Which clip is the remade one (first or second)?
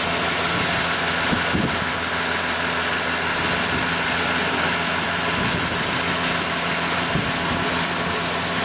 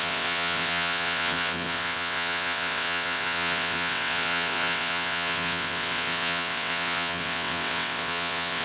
second